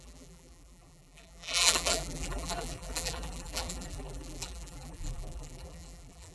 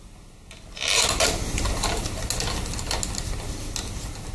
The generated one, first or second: first